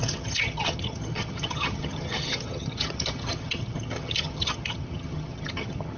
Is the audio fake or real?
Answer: fake